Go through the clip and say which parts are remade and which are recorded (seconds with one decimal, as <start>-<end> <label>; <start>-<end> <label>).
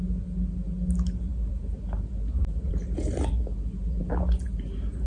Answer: 0.0-5.1 recorded